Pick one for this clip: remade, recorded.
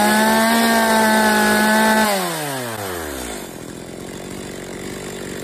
recorded